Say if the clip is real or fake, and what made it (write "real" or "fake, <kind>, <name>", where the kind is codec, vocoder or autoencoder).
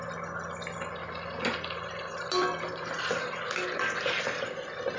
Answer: real